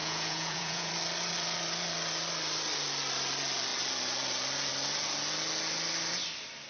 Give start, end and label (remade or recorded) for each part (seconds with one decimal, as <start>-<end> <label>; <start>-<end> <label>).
0.0-0.9 remade; 0.9-6.7 recorded